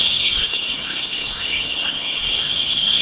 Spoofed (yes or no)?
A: yes